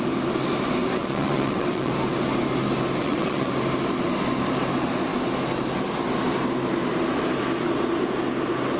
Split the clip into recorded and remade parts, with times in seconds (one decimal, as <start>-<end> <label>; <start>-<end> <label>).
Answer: 0.0-1.0 recorded; 1.0-1.9 remade; 1.9-3.0 recorded; 3.0-3.5 remade; 3.5-8.8 recorded